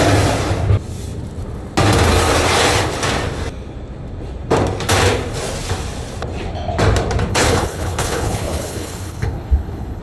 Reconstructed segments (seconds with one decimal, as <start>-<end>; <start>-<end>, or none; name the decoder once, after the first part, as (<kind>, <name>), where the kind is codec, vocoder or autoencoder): 7.3-10.0 (codec, HILCodec)